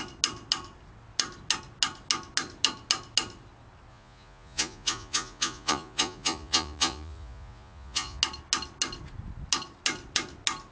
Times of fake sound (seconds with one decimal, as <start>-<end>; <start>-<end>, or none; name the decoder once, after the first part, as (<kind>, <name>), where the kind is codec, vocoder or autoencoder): 3.9-8.2 (vocoder, Vocos)